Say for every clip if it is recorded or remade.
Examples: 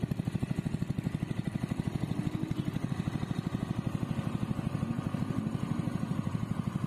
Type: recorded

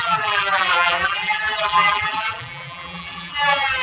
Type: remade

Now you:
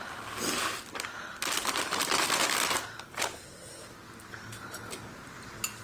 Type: recorded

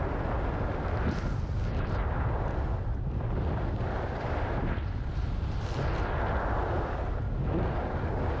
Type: recorded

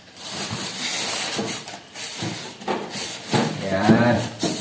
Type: remade